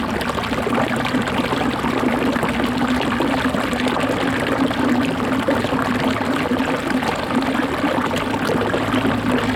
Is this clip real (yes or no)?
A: yes